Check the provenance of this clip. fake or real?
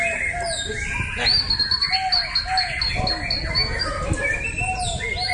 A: real